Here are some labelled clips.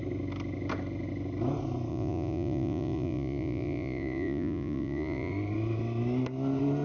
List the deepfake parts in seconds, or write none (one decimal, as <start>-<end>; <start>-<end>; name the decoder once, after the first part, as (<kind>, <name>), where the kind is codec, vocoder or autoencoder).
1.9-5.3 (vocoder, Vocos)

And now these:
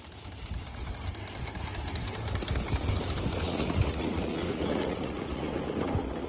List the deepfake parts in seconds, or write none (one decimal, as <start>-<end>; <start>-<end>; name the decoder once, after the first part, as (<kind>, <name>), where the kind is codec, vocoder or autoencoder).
3.3-6.3 (vocoder, Vocos)

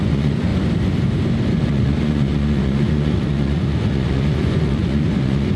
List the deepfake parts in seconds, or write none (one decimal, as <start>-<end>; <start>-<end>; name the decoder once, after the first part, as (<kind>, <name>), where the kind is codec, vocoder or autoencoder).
0.0-0.5 (vocoder, Vocos); 1.6-5.6

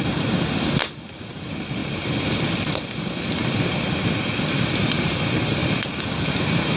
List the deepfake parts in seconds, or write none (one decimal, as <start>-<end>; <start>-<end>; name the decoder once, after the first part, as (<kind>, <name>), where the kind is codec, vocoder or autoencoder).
none

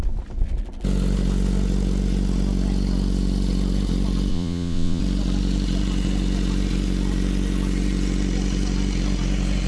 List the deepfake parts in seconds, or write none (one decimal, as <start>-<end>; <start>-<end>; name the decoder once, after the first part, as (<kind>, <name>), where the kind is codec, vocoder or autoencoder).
4.3-5.0 (vocoder, Vocos)

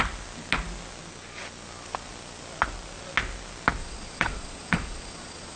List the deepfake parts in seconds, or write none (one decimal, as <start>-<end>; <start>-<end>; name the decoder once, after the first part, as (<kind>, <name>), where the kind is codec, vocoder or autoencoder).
3.8-5.6 (vocoder, Vocos)

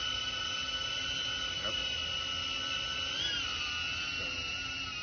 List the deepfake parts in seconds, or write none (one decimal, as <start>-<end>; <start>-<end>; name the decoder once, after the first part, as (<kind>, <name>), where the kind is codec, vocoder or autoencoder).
none